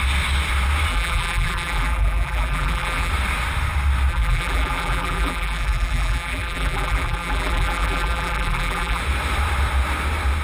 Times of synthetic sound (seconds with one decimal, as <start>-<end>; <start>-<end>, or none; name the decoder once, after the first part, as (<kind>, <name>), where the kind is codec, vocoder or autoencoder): 0.9-3.1 (vocoder, BigVGAN v2); 4.1-9.0